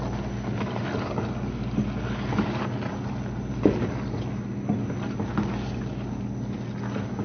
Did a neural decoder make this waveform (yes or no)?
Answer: no